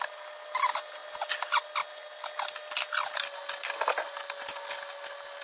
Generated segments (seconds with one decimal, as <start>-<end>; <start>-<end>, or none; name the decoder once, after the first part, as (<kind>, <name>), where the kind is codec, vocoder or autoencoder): none